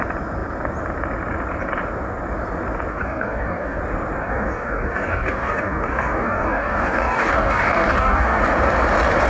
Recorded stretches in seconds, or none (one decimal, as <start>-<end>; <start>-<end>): 0.0-2.9; 3.8-4.2; 8.4-9.3